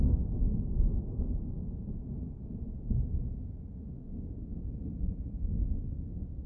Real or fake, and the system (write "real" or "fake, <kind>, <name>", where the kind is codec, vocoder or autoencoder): real